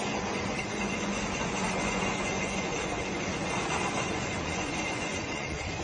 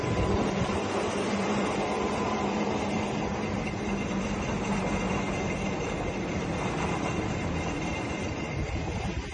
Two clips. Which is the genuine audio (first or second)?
second